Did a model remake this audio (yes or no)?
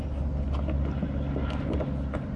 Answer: no